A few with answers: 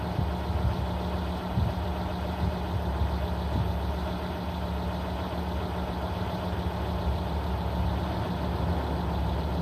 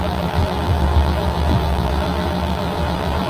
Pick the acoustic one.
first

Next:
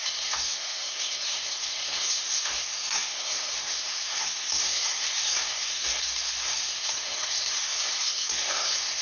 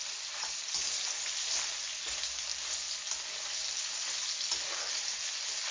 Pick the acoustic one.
second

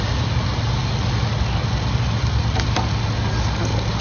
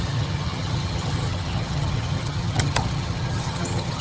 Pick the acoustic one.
first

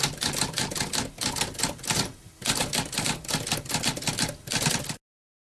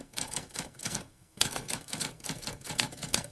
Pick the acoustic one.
first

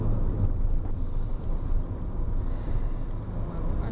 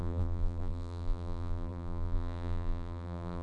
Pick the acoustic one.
first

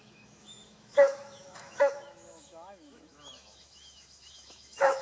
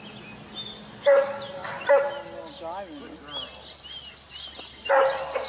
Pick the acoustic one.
second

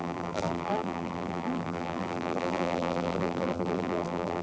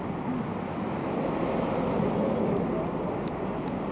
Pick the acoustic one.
second